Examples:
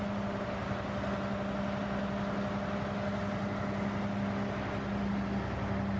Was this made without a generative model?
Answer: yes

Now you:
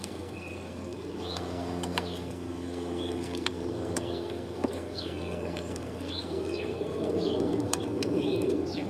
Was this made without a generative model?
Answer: no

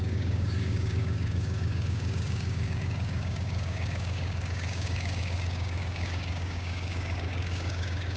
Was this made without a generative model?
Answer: no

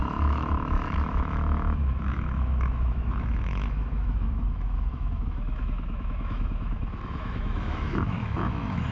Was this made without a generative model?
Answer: no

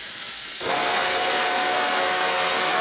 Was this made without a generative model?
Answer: no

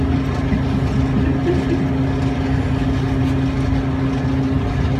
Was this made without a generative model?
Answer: yes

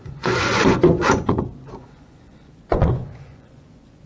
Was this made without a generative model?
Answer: no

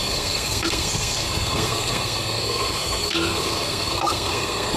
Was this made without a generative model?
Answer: no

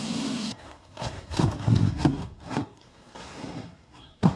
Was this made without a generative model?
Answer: no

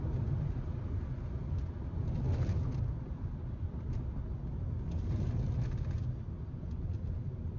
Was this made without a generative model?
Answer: yes